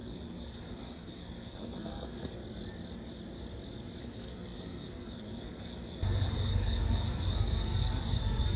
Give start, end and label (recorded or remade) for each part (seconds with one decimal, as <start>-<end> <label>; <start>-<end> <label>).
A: 0.0-2.4 remade; 2.4-4.0 recorded; 4.0-8.6 remade